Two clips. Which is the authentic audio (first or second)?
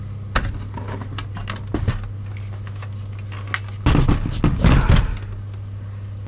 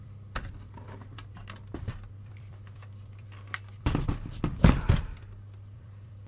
first